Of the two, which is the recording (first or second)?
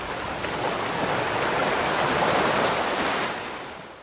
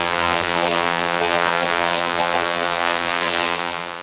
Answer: first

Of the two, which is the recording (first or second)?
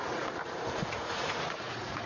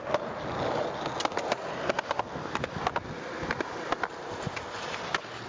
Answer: second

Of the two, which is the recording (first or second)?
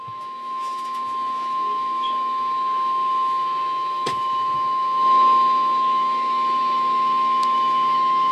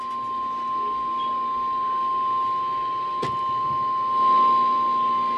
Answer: second